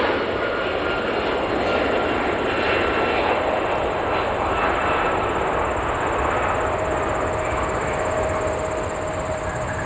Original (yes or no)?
yes